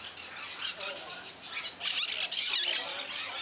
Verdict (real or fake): real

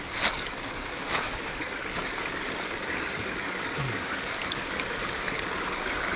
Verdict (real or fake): fake